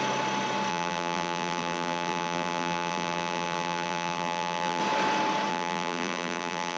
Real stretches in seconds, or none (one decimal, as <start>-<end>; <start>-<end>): 0.0-0.7; 4.8-5.5